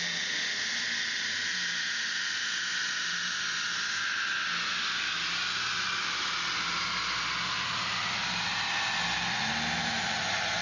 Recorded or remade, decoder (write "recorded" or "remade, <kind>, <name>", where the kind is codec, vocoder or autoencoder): recorded